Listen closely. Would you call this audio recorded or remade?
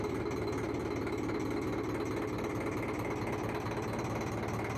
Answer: recorded